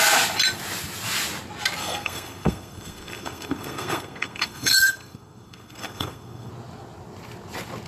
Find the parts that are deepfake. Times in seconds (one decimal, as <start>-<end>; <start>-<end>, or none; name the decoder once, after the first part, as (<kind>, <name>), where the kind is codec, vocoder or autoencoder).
1.8-6.5 (codec, SNAC)